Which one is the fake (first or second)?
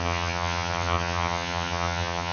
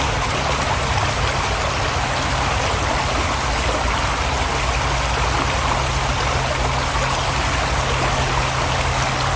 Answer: first